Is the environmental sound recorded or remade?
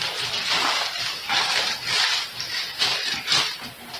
remade